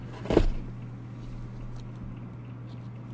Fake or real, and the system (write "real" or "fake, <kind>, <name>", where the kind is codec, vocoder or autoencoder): real